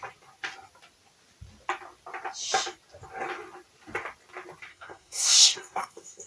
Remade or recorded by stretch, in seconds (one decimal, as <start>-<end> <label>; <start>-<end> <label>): 0.0-4.7 recorded; 4.7-6.3 remade